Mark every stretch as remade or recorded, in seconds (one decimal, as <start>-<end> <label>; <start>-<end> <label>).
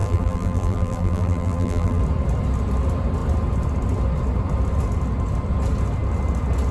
0.0-2.0 remade; 2.0-6.7 recorded